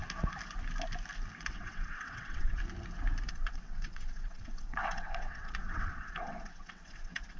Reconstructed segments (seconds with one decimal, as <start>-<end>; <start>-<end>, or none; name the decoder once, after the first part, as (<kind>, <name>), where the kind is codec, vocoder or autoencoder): 1.4-2.6 (vocoder, WaveNeXt); 3.3-7.4